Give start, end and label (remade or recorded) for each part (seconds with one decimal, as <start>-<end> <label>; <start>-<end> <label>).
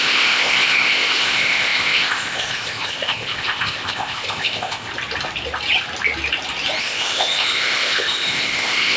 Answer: 0.0-4.9 remade; 4.9-6.8 recorded; 6.8-9.0 remade